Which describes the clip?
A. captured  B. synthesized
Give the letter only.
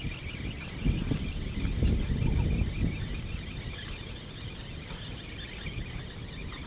A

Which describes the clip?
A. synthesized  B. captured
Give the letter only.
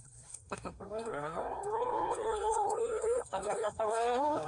A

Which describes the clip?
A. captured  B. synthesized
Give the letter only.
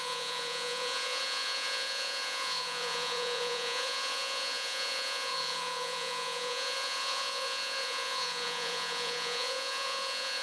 B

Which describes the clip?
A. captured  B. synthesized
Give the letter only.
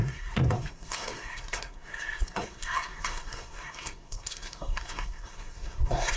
B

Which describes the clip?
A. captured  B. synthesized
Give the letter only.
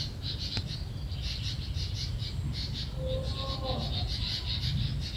A